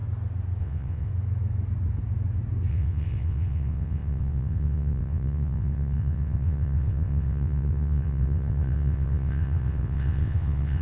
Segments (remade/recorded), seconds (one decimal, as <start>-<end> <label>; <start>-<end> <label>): 0.0-0.6 recorded; 0.6-1.1 remade; 1.1-2.7 recorded; 2.7-10.8 remade